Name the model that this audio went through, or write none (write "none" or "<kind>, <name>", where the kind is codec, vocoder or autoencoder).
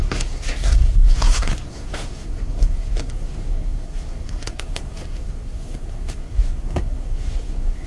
codec, SNAC